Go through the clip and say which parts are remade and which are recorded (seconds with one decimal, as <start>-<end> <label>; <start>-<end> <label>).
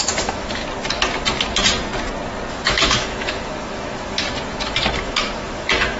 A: 0.0-0.6 remade; 0.6-2.5 recorded; 2.5-6.0 remade